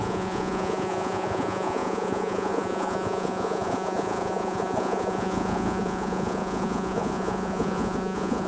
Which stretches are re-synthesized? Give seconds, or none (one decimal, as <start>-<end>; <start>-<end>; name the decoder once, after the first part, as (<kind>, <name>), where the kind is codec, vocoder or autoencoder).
0.0-8.5 (vocoder, Vocos)